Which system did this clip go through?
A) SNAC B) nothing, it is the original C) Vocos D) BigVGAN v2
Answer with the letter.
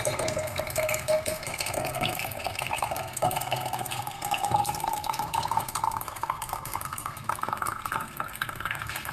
A